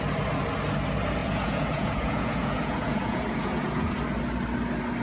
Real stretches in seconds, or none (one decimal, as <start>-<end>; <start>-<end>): 0.0-1.2; 3.9-5.0